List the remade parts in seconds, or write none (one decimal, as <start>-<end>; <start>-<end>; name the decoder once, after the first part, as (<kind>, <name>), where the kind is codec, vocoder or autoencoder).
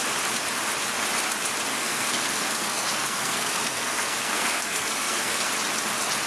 1.7-5.5 (codec, SNAC)